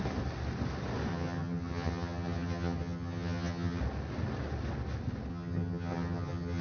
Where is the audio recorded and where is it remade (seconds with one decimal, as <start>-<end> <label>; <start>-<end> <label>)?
0.0-1.1 recorded; 1.1-3.8 remade; 3.8-5.3 recorded; 5.3-6.6 remade